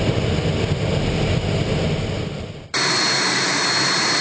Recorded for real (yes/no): yes